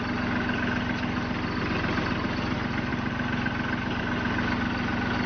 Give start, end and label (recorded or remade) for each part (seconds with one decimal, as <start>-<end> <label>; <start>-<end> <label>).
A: 0.0-5.3 recorded